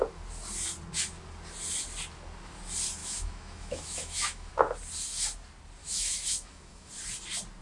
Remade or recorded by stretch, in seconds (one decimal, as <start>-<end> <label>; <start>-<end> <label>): 0.0-3.0 recorded; 3.0-4.5 remade; 4.5-5.8 recorded; 5.8-6.9 remade; 6.9-7.6 recorded